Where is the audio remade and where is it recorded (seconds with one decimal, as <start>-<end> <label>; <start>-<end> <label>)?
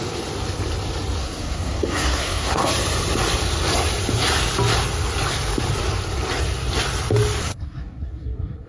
0.0-1.2 recorded; 1.2-2.7 remade; 2.7-7.4 recorded; 7.4-8.7 remade